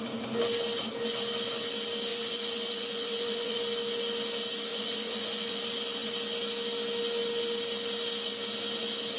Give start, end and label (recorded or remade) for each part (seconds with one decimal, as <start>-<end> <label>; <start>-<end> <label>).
0.0-2.1 recorded; 2.1-3.6 remade; 3.6-4.7 recorded; 4.7-5.6 remade; 5.6-9.2 recorded